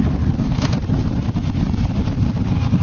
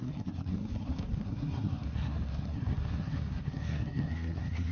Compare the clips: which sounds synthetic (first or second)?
second